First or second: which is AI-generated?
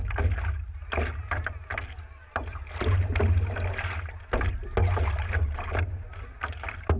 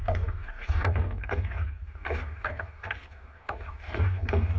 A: second